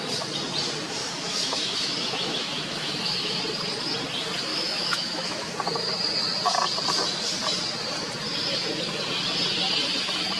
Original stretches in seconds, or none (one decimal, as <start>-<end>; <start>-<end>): 0.0-1.0; 3.4-4.5; 5.5-10.4